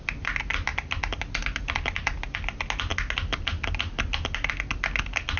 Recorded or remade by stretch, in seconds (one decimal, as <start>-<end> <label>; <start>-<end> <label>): 0.0-5.4 recorded